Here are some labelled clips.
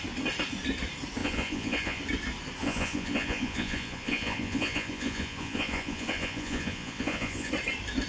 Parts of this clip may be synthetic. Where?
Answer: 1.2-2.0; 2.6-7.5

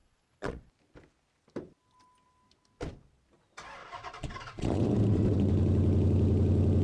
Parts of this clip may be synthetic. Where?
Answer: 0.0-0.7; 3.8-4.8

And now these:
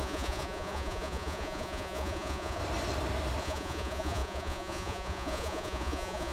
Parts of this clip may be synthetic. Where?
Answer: 0.0-2.6; 3.4-6.3